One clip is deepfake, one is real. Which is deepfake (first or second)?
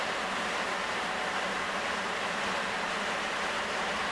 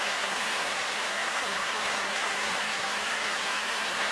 second